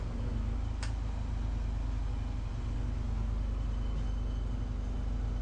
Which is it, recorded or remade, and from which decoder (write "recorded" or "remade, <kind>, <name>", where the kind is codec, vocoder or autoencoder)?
recorded